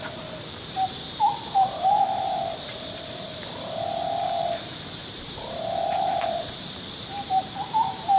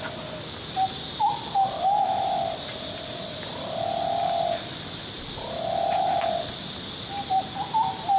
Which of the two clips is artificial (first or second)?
first